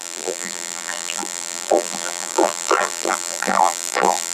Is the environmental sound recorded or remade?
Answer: remade